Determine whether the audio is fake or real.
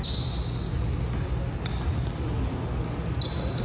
real